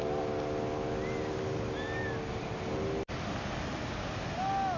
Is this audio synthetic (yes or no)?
no